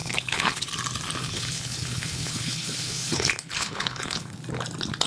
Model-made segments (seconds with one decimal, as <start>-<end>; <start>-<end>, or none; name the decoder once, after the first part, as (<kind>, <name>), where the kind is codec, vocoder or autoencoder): 0.0-0.7 (codec, HILCodec); 1.2-4.3